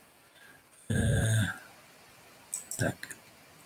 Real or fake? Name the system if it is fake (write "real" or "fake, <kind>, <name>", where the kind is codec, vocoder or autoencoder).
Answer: real